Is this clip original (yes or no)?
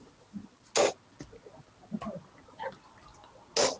yes